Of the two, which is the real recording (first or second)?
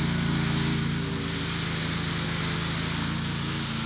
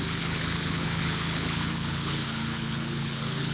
first